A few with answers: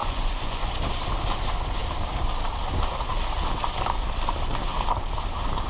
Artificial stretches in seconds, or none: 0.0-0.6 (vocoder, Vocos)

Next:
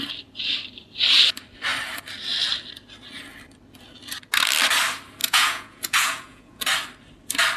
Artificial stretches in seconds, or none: 5.2-6.6 (vocoder, Vocos)

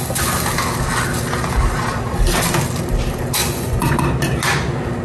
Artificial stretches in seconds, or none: 3.4-4.0 (vocoder, Vocos)

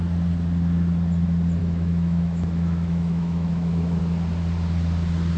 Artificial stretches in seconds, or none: 1.6-4.0 (autoencoder, DAC-VAE)

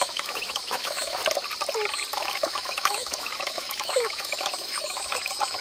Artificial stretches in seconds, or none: 0.0-1.2 (autoencoder, DAC-VAE); 2.1-5.6